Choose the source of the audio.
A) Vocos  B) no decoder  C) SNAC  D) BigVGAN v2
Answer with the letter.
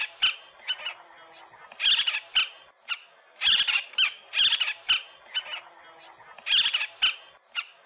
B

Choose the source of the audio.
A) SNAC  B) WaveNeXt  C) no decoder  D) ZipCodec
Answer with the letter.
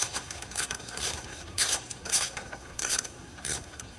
A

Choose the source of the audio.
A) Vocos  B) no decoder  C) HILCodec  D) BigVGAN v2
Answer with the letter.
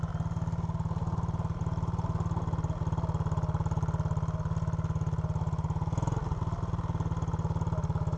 B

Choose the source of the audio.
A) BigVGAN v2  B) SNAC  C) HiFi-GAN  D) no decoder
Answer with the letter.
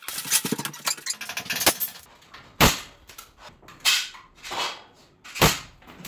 D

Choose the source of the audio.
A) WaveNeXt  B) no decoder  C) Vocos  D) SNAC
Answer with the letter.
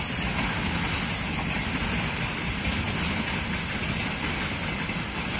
B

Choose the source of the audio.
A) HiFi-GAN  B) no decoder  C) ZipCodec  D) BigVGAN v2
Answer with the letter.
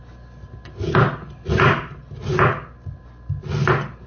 B